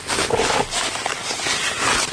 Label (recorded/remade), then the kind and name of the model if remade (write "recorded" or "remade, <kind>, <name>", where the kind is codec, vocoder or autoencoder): recorded